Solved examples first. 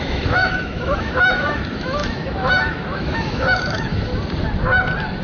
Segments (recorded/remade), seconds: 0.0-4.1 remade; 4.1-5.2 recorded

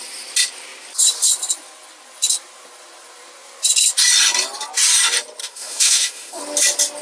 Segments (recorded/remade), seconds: 0.0-5.4 recorded; 5.4-6.4 remade; 6.4-7.0 recorded

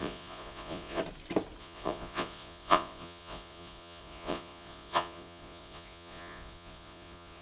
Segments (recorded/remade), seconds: 0.0-1.0 remade; 1.0-1.6 recorded; 1.6-7.4 remade

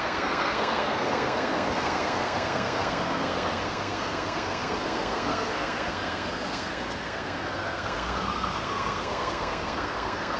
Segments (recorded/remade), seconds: 0.0-10.4 remade

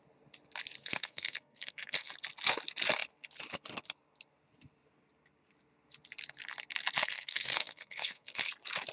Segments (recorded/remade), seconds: 0.0-0.8 recorded; 0.8-2.1 remade; 2.1-7.0 recorded; 7.0-8.5 remade; 8.5-8.9 recorded

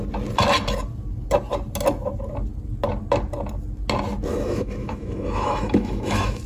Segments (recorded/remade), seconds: 0.0-4.3 recorded; 4.3-6.5 remade

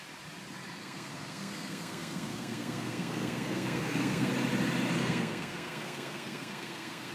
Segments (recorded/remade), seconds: 0.0-0.8 recorded; 0.8-4.3 remade; 4.3-5.0 recorded; 5.0-7.1 remade